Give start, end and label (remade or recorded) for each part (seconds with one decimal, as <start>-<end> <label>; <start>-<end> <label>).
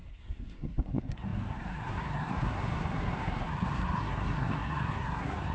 0.0-5.5 remade